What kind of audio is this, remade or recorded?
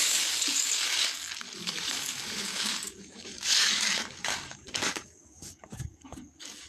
remade